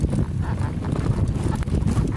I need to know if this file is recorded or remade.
recorded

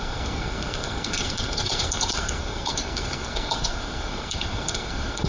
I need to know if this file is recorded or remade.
remade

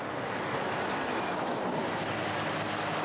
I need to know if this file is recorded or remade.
recorded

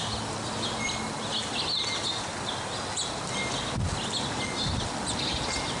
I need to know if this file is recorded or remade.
recorded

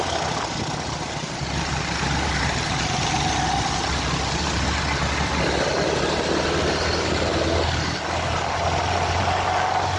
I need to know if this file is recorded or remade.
recorded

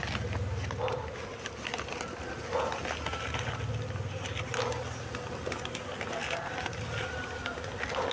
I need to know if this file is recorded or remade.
recorded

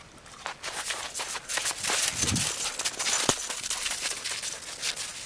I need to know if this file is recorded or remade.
recorded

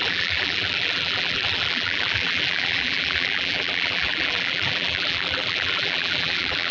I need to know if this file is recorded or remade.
remade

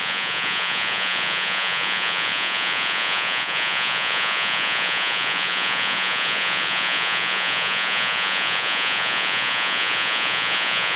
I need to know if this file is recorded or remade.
remade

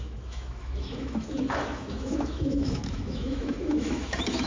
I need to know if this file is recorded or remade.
remade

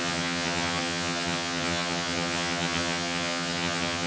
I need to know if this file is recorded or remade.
remade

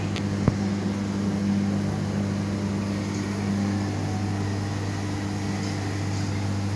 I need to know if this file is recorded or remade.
recorded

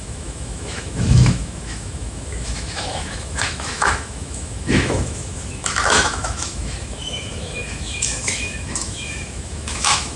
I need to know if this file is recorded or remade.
remade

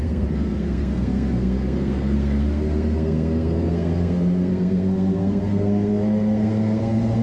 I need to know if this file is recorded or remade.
remade